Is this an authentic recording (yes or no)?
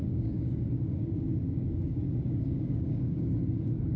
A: no